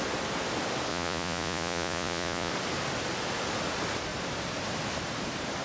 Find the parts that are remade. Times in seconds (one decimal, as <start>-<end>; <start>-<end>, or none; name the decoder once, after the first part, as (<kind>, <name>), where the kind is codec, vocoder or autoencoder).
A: 0.9-2.5 (vocoder, Vocos)